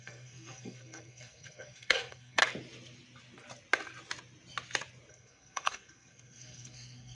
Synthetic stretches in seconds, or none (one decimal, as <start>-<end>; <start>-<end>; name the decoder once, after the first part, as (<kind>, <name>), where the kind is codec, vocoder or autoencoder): 0.0-2.4 (codec, SNAC); 5.1-7.1